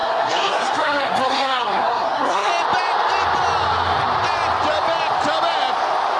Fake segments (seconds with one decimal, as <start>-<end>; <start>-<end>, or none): 0.0-2.5